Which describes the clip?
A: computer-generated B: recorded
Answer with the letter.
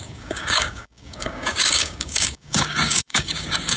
A